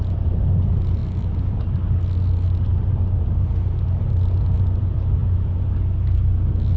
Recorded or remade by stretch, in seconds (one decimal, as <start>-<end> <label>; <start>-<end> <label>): 0.0-6.8 recorded